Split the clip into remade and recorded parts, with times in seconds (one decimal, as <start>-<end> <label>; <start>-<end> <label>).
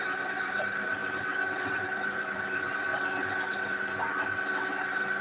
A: 0.0-2.9 remade; 2.9-5.2 recorded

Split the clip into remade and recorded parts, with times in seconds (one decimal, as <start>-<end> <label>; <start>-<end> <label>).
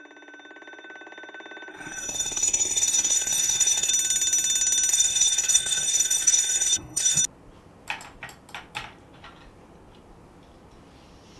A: 0.0-1.7 recorded; 1.7-3.9 remade; 3.9-4.9 recorded; 4.9-7.2 remade; 7.2-11.4 recorded